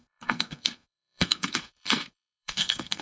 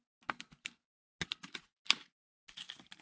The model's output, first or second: first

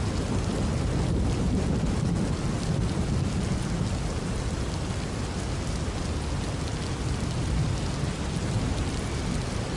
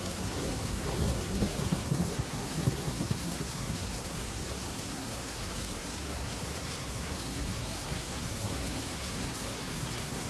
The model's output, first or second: second